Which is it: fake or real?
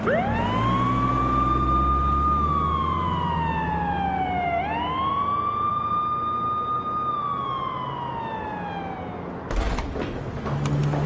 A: real